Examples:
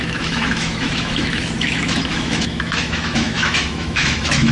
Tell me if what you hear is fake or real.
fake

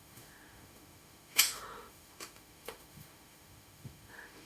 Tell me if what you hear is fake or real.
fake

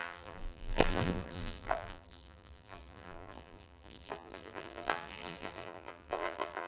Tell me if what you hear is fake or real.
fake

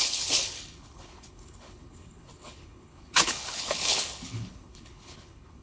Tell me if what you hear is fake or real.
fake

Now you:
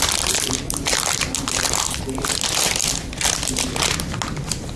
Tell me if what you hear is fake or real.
fake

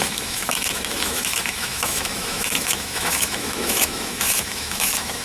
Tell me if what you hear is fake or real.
fake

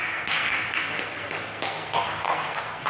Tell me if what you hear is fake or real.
fake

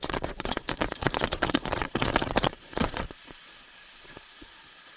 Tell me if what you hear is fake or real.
fake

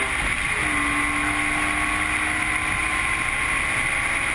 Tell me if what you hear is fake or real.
real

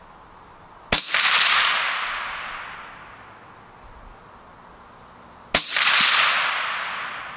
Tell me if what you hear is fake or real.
real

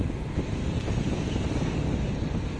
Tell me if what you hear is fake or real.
real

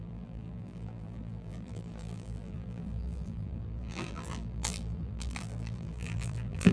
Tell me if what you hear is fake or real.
fake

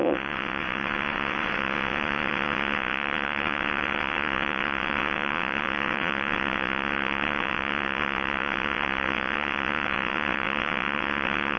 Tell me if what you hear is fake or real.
fake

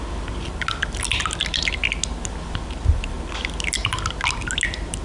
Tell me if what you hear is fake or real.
real